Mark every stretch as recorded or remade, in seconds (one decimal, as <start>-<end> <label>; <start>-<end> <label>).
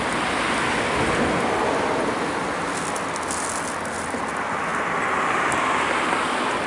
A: 0.0-6.7 recorded